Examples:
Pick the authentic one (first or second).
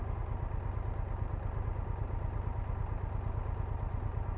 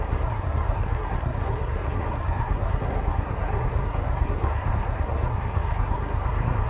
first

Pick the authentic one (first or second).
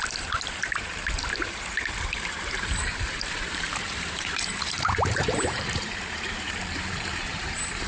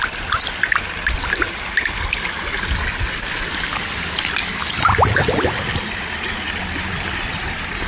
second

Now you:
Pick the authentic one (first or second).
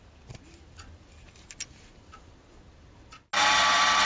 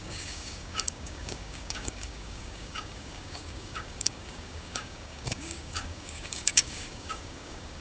first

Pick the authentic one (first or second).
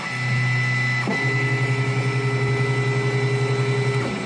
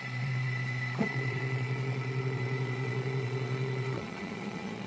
first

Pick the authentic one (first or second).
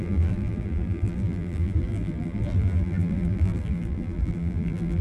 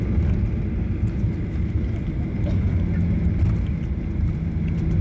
second